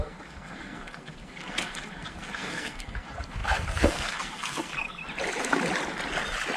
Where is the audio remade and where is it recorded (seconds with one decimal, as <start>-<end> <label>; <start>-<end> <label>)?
0.0-5.0 remade; 5.0-6.6 recorded